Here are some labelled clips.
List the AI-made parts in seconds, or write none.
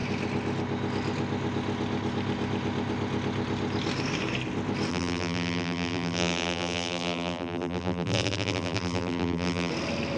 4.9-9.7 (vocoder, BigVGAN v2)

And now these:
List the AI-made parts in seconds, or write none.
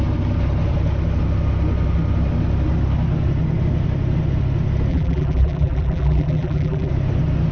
4.9-6.9 (vocoder, BigVGAN v2)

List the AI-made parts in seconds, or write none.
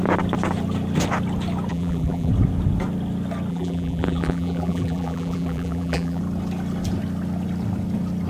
1.7-2.3 (vocoder, BigVGAN v2); 3.5-6.2